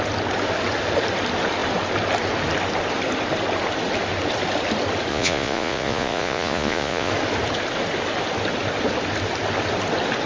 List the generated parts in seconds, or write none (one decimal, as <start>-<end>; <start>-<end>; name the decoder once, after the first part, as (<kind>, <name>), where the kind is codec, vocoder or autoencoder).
5.1-7.1 (vocoder, Vocos)